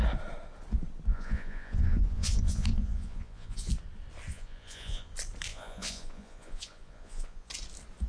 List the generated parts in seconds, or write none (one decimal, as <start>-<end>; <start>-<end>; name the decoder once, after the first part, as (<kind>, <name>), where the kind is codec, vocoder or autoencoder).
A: 1.1-3.7 (vocoder, Vocos); 4.3-5.1; 5.5-7.5